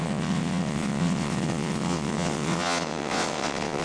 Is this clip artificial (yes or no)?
yes